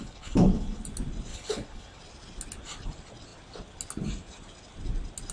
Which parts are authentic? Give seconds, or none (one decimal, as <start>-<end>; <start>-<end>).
0.8-1.3; 2.0-5.3